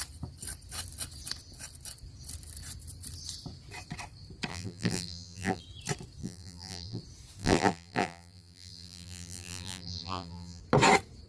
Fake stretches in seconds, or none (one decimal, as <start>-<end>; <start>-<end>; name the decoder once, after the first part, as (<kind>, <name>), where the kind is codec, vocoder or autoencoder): 4.5-5.6 (vocoder, BigVGAN v2); 6.2-7.0; 7.4-10.6